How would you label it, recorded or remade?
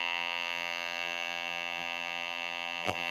remade